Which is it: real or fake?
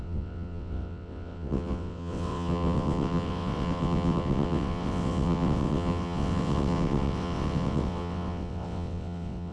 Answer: fake